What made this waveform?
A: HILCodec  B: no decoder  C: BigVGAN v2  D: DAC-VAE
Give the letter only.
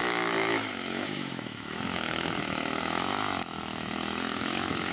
D